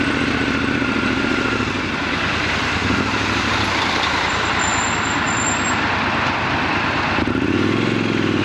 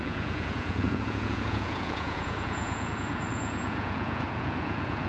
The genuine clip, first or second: first